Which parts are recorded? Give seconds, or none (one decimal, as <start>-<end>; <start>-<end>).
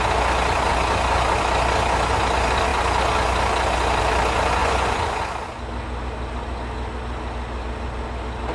0.0-4.6; 5.2-8.5